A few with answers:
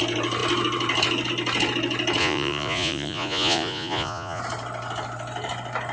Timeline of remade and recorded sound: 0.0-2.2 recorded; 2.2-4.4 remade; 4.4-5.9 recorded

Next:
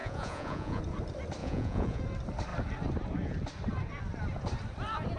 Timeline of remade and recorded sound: 0.0-0.8 remade; 0.8-1.4 recorded; 1.4-2.0 remade; 2.0-5.2 recorded

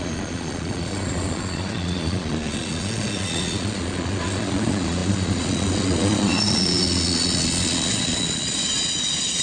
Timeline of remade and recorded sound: 0.0-9.4 remade